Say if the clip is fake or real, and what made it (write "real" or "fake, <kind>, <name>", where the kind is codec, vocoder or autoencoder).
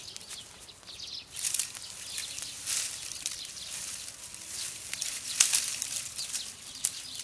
real